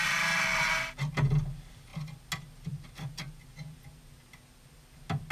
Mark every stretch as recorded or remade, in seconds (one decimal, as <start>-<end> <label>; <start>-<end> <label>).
0.0-5.3 recorded